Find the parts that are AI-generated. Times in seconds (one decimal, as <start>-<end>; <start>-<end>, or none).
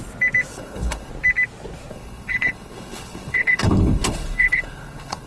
0.5-1.1; 1.9-5.3